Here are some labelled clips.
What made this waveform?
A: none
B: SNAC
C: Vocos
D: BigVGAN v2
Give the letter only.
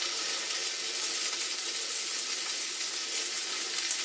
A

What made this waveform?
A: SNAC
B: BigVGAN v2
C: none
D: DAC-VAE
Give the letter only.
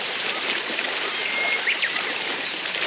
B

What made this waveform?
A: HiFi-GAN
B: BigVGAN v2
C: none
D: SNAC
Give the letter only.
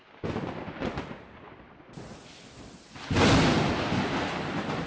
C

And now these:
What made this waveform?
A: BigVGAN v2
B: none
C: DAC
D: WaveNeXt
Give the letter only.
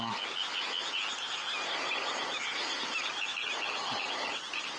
B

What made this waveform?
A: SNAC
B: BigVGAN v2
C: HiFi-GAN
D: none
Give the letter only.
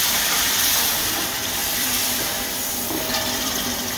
B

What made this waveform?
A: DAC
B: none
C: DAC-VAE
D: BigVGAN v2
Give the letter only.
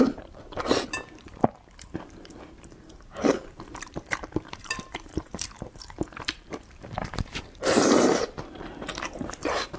D